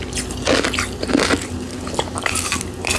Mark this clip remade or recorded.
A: recorded